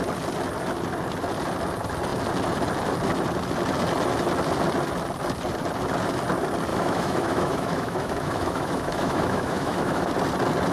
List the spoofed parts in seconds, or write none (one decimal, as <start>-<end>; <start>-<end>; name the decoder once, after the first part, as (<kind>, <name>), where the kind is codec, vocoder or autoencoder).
6.7-10.1 (autoencoder, DAC-VAE)